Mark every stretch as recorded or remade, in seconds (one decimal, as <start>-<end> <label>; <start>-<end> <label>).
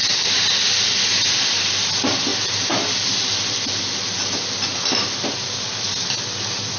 0.0-6.8 recorded